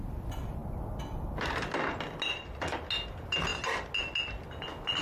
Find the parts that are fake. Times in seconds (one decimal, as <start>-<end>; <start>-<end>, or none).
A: none